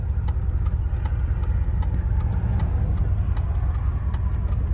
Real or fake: real